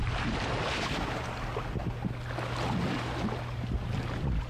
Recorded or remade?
recorded